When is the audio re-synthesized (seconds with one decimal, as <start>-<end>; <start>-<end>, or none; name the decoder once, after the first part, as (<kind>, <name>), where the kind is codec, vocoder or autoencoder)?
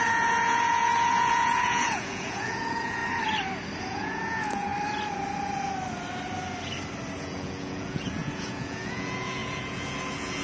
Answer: 0.0-3.0 (vocoder, Vocos); 3.8-4.7; 7.2-10.4